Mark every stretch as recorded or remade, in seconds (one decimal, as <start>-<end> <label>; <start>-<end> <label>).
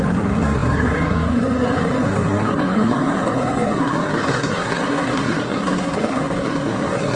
0.0-7.2 remade